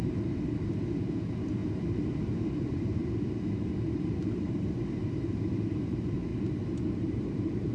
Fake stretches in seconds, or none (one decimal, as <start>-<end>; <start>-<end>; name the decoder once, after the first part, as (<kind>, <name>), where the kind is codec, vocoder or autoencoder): 0.0-1.6 (vocoder, BigVGAN v2); 2.5-3.0; 4.3-6.3; 7.0-7.7